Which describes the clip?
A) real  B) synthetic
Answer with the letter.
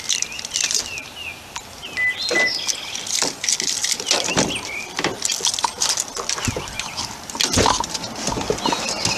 A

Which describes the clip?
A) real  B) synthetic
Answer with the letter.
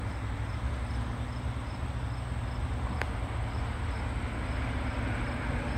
A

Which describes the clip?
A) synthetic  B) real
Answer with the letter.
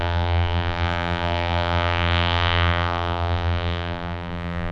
A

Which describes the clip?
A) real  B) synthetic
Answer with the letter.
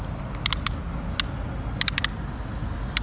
A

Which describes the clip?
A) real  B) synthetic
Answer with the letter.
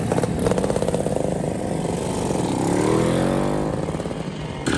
A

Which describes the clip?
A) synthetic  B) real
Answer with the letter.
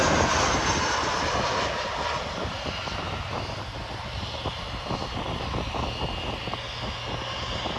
B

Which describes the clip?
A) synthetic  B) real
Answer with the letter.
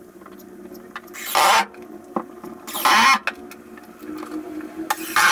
B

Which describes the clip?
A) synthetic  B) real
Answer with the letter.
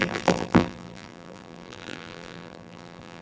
A